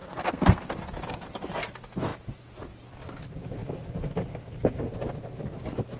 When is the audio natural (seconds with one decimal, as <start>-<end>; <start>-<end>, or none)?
0.6-6.0